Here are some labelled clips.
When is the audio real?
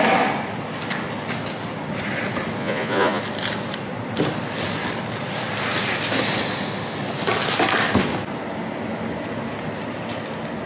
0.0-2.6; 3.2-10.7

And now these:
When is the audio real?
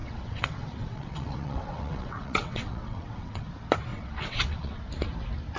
3.4-3.9; 4.8-5.6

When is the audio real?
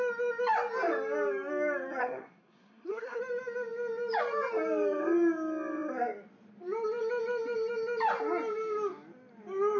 0.0-2.0; 3.2-9.8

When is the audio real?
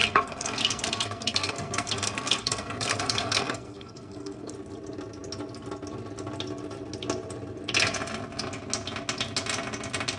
4.5-10.2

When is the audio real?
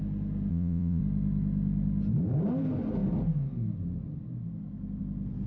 0.0-0.5; 1.0-5.5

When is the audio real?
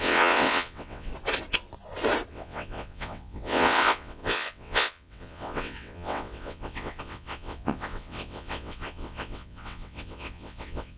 1.1-2.3